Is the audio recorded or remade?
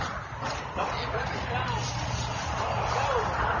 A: recorded